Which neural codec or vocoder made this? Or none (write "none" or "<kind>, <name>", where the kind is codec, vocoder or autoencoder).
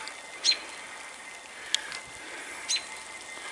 none